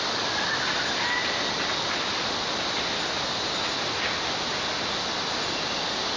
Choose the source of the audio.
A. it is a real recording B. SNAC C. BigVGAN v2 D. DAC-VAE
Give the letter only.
A